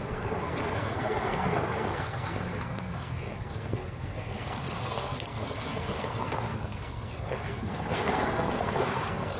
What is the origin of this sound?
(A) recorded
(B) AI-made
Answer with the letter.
B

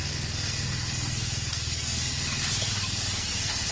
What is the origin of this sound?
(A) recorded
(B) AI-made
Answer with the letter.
B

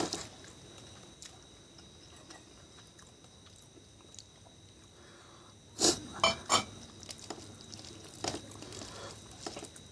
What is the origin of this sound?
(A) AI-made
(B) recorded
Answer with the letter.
B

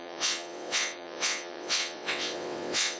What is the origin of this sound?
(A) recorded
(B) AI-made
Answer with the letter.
B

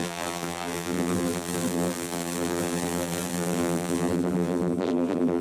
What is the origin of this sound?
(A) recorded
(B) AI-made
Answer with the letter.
B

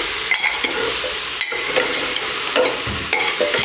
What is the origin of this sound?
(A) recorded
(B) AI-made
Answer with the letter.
A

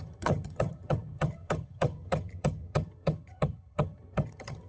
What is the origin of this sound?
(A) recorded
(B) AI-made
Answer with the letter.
B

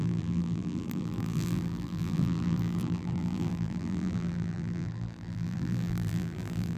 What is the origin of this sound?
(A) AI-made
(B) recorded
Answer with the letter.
A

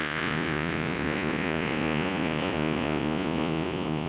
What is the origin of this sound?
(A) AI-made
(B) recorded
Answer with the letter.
A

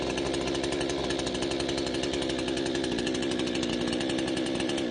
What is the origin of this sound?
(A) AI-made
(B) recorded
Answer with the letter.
B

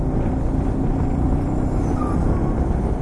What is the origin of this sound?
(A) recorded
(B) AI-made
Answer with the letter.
A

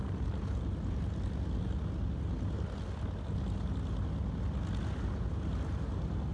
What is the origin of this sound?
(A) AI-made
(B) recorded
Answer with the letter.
B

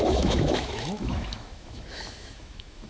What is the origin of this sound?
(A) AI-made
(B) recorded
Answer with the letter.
A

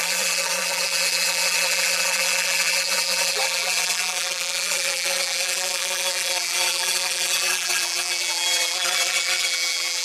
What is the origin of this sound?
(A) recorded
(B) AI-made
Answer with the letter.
B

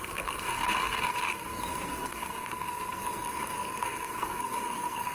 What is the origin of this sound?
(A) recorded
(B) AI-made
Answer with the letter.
B